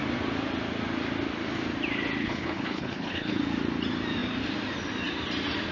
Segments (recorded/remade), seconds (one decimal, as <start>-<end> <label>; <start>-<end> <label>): 0.0-2.2 recorded; 2.2-3.4 remade; 3.4-5.7 recorded